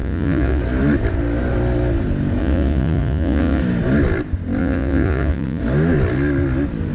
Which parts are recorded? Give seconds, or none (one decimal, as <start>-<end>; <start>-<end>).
0.6-2.4; 3.6-4.6; 5.6-6.9